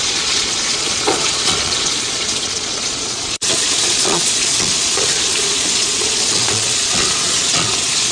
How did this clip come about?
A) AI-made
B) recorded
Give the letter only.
A